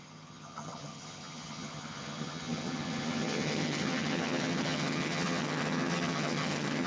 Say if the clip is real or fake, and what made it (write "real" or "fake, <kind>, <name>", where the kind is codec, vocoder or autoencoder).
fake, vocoder, HiFi-GAN